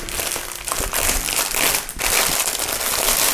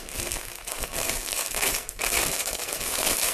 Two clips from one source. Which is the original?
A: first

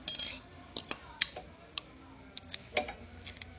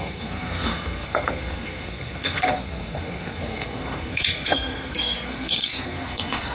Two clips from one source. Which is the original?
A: first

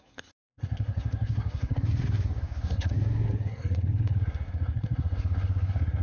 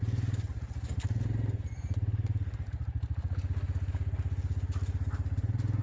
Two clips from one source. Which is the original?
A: second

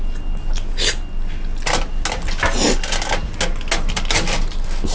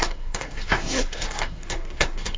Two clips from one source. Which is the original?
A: first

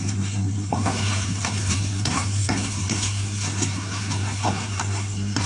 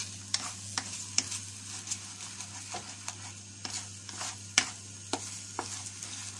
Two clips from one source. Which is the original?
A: second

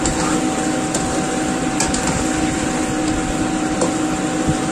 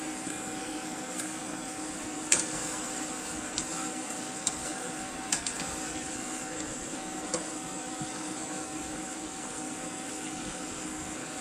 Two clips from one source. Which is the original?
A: first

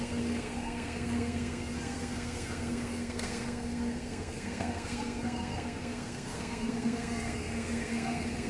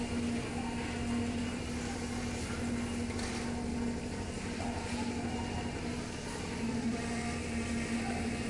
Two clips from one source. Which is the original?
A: second